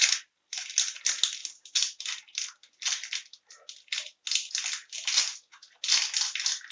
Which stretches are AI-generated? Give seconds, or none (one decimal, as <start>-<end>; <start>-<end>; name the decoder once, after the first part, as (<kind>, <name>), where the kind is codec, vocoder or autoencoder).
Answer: none